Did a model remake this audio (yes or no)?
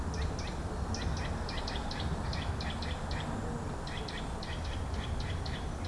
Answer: no